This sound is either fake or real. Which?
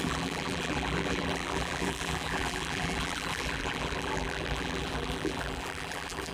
fake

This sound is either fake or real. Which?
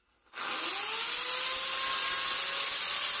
real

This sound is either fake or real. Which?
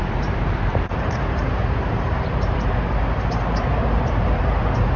fake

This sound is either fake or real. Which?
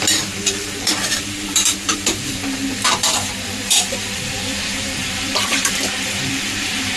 fake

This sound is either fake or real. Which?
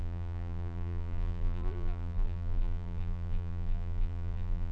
fake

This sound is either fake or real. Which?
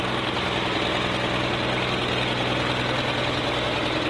real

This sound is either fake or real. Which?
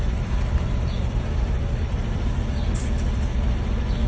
fake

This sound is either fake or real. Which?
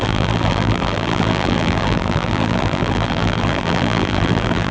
fake